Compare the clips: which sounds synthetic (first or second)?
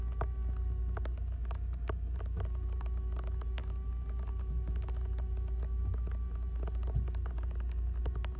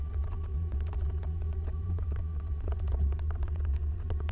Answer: second